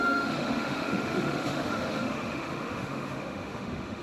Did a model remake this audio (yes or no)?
yes